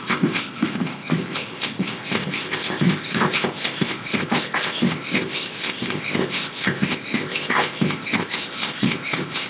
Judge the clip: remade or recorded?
remade